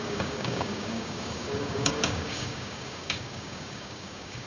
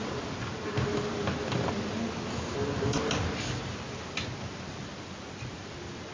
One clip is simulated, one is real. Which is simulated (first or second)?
first